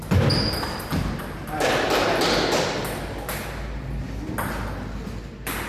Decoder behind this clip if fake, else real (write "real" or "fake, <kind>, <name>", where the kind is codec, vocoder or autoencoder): real